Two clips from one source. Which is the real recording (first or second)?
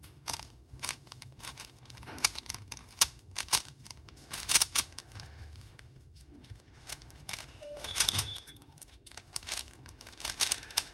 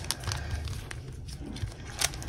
second